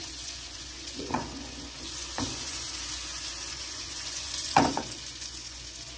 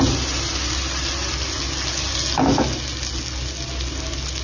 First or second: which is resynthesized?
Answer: first